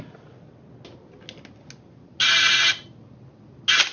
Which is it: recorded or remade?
recorded